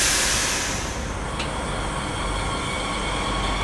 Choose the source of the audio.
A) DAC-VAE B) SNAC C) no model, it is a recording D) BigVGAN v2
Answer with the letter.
C